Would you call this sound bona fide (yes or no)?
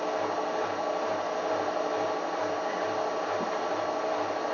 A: yes